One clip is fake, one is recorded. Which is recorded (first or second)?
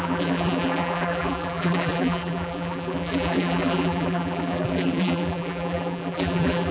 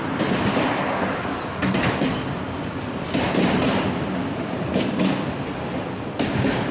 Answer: second